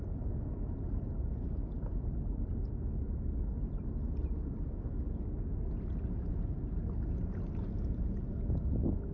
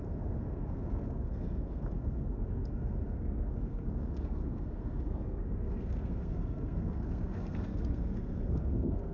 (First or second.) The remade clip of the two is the second